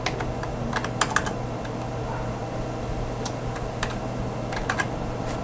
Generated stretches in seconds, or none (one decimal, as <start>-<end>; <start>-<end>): none